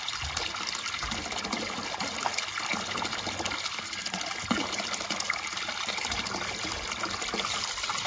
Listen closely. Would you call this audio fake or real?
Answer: real